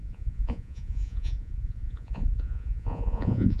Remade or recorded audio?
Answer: remade